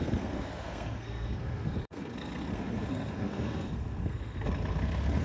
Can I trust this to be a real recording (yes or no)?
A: no